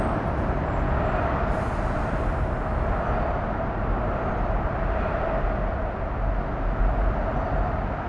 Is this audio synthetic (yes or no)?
no